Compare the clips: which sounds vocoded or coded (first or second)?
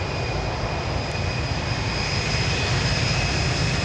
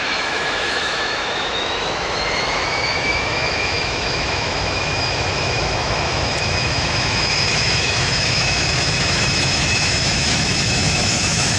second